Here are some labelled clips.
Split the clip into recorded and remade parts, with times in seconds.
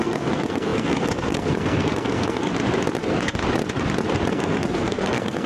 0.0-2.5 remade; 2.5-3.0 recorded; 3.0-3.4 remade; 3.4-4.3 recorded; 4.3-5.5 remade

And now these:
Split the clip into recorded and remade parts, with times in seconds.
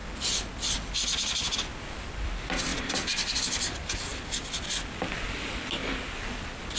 0.0-0.5 remade; 0.5-1.7 recorded; 1.7-2.3 remade; 2.3-2.7 recorded; 2.7-3.4 remade; 3.4-6.8 recorded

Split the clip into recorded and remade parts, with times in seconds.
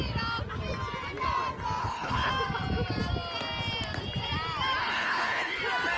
0.0-1.8 recorded; 1.8-2.3 remade; 2.3-4.8 recorded; 4.8-5.6 remade; 5.6-6.0 recorded